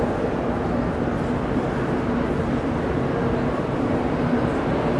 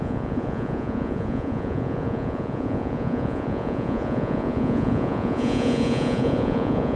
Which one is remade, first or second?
second